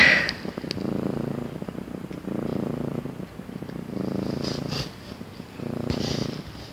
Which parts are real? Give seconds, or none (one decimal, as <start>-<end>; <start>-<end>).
0.0-6.7